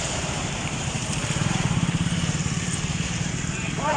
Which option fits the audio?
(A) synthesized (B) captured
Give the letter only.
A